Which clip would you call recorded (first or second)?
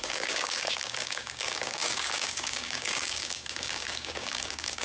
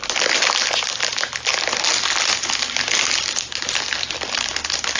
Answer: second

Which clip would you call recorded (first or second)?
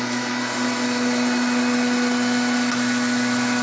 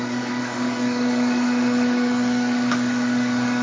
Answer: first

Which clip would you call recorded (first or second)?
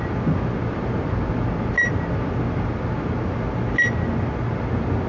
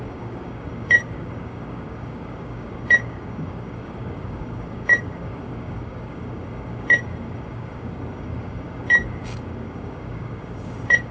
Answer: first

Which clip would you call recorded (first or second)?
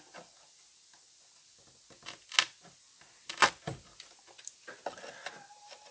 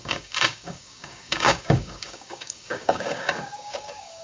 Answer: first